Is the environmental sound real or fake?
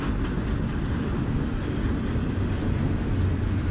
real